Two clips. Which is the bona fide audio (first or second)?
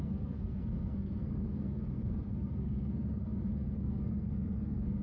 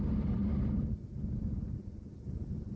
second